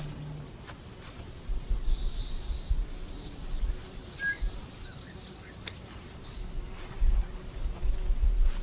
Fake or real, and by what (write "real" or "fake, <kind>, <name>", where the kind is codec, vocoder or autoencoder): real